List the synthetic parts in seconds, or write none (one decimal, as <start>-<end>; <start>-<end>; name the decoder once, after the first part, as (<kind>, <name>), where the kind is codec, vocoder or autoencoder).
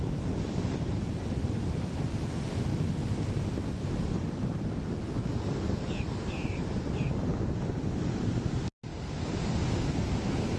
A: 0.0-2.7 (vocoder, BigVGAN v2); 6.1-7.3